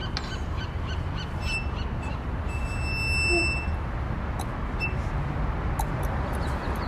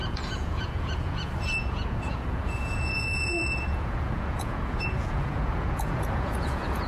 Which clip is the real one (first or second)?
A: first